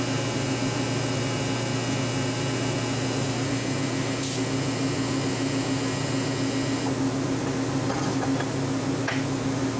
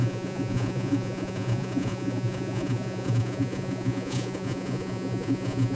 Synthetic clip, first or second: second